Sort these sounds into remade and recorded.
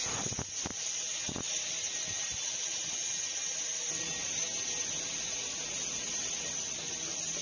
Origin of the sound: recorded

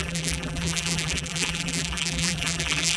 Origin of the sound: remade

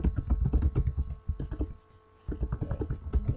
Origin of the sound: recorded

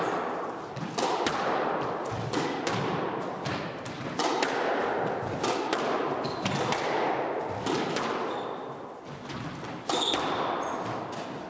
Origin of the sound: recorded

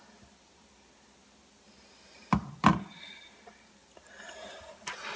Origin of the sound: recorded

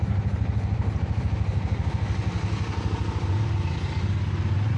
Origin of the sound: recorded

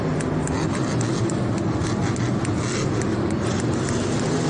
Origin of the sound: recorded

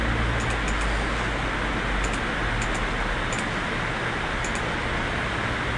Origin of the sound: recorded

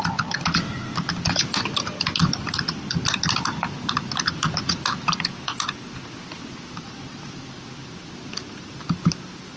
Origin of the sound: remade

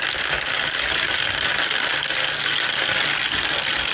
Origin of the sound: recorded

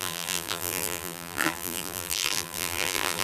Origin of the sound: remade